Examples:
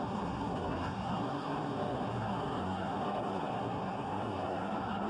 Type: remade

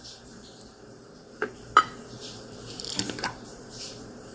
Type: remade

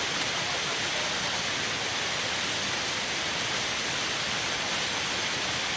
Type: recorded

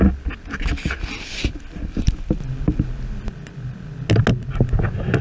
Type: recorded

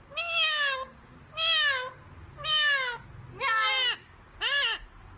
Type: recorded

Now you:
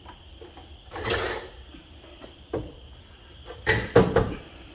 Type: remade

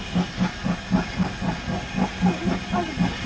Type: recorded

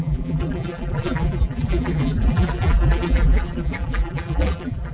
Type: remade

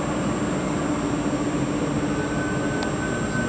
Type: recorded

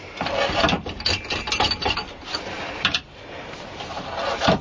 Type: recorded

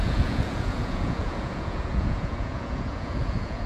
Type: remade